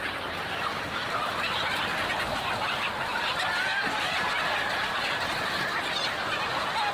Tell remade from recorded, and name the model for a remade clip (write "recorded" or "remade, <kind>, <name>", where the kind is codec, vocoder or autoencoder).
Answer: recorded